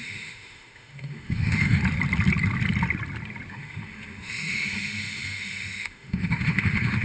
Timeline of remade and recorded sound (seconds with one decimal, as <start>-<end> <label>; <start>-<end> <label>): 0.0-1.8 remade; 1.8-3.5 recorded; 3.5-7.0 remade